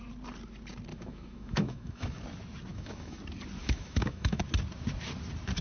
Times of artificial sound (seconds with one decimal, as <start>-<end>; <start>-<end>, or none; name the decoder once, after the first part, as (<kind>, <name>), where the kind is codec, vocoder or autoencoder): 0.9-2.2 (autoencoder, DAC-VAE); 2.7-3.2; 3.6-4.4